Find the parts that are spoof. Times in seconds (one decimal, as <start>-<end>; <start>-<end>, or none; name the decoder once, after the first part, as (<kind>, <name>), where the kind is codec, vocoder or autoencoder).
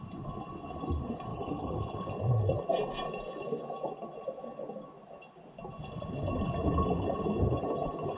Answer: 1.3-2.0 (codec, HILCodec)